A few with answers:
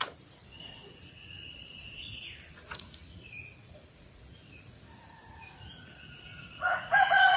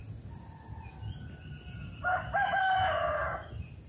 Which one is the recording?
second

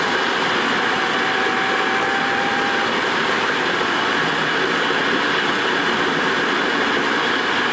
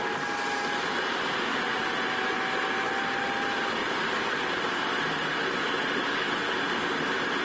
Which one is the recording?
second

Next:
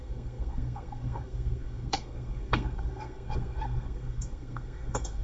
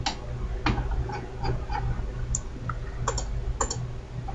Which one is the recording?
second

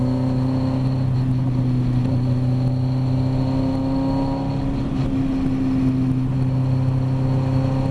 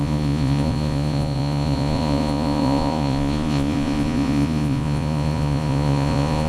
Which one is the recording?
first